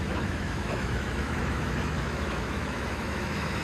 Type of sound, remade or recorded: remade